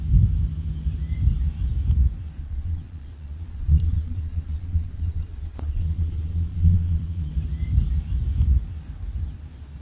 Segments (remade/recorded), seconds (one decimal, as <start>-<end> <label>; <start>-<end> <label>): 0.0-2.4 recorded; 2.4-7.3 remade; 7.3-9.8 recorded